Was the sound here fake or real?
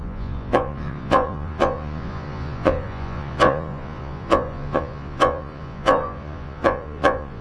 fake